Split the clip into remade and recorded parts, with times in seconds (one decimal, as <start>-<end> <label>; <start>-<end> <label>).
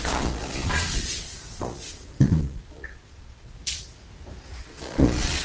0.0-3.6 remade; 3.6-4.6 recorded; 4.6-5.4 remade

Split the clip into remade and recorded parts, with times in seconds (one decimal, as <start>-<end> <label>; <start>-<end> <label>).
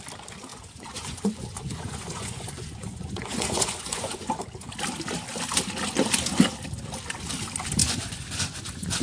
0.0-0.5 recorded; 0.5-4.3 remade; 4.3-7.8 recorded; 7.8-9.0 remade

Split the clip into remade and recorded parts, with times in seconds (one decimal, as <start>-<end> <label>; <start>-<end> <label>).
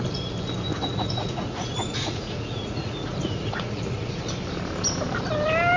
0.0-0.7 recorded; 0.7-4.2 remade; 4.2-5.8 recorded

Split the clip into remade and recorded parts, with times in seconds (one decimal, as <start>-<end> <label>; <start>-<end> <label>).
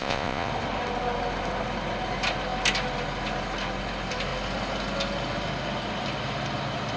0.0-0.5 remade; 0.5-7.0 recorded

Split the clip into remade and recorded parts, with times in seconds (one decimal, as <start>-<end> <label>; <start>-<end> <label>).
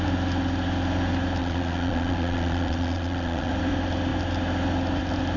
0.0-1.4 recorded; 1.4-3.5 remade; 3.5-5.4 recorded